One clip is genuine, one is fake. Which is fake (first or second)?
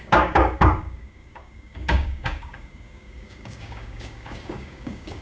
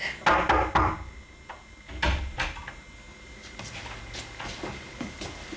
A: first